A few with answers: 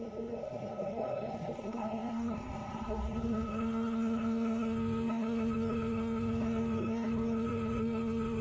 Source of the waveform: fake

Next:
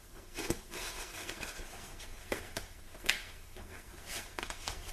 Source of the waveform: fake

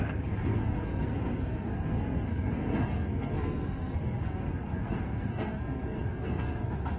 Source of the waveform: fake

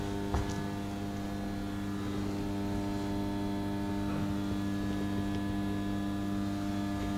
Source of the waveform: real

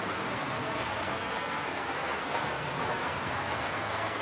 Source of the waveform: fake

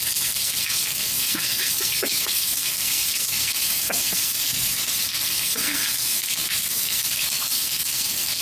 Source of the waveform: fake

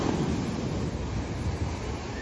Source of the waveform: real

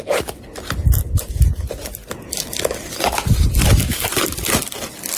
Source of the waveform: real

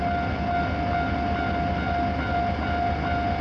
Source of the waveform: real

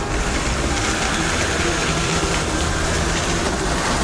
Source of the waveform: real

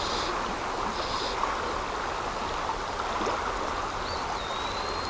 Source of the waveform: real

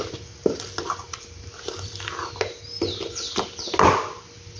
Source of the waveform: real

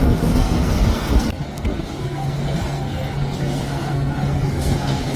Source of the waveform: fake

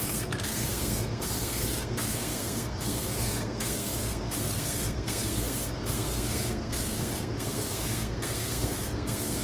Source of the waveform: fake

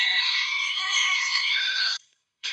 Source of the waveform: fake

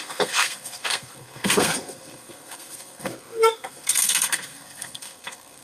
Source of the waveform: fake